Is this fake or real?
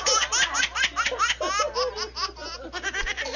real